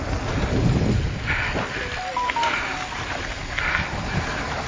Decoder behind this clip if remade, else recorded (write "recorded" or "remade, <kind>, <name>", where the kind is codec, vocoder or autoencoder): recorded